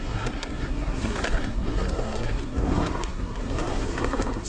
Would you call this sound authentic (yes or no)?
no